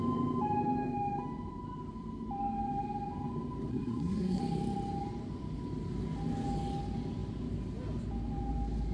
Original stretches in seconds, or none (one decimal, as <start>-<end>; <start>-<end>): 0.0-3.7; 4.4-8.9